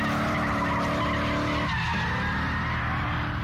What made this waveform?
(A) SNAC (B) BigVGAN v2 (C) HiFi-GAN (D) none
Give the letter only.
D